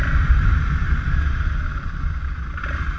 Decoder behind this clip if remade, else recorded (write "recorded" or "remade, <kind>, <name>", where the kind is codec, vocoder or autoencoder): recorded